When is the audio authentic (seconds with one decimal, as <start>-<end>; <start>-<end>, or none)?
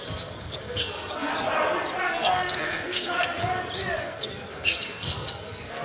1.3-2.0; 3.4-4.0